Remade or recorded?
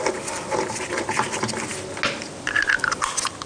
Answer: recorded